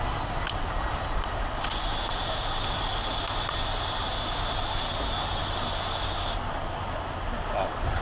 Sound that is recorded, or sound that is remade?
recorded